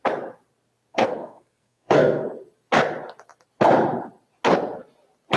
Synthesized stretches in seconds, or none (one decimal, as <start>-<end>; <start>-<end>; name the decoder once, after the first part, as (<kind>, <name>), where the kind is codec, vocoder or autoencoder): 0.9-2.3 (codec, SNAC)

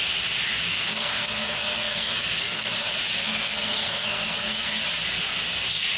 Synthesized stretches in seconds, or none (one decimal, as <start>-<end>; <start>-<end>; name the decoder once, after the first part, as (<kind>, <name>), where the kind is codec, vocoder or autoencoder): 0.7-2.7 (codec, SNAC); 3.2-4.8

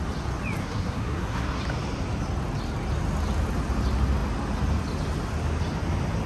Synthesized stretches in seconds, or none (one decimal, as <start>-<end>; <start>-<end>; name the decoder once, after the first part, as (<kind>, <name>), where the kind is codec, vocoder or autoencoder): 0.6-1.6 (codec, SNAC)

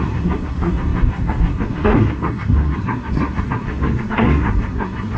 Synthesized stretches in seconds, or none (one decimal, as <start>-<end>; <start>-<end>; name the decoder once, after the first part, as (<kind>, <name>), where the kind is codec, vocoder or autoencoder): 0.0-5.2 (codec, SNAC)